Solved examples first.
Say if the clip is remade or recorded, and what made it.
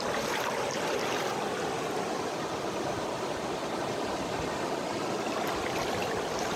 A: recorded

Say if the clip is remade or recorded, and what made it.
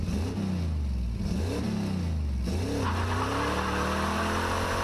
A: recorded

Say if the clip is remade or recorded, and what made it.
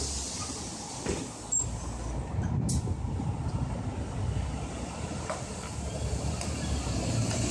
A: recorded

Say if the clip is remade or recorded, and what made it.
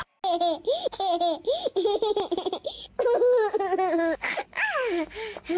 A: recorded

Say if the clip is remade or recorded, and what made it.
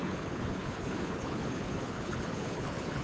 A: remade, codec, HILCodec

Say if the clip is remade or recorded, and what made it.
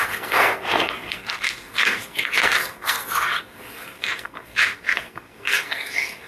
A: remade, codec, SNAC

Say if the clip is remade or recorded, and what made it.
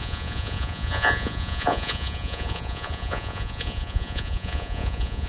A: remade, vocoder, Vocos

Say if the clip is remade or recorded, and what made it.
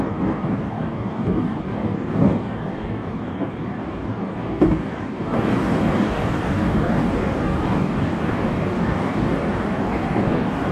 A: remade, codec, DAC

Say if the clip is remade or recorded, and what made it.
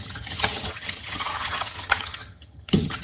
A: remade, vocoder, HiFi-GAN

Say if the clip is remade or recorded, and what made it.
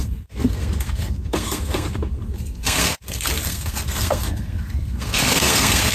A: remade, codec, SNAC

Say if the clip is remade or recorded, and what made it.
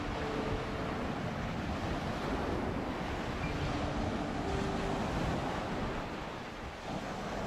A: recorded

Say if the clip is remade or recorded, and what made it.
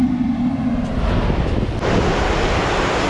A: recorded